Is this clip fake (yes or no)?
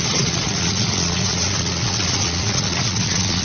yes